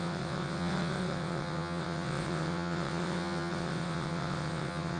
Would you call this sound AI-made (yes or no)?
yes